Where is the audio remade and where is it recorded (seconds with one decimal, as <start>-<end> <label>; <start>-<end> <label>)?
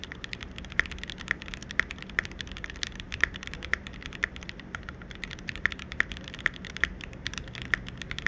0.0-1.6 recorded; 1.6-6.4 remade; 6.4-8.3 recorded